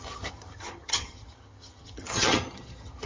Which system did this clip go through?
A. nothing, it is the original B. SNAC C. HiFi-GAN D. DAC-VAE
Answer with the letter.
C